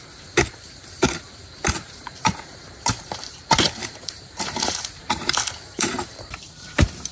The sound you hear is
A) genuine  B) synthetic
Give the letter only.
B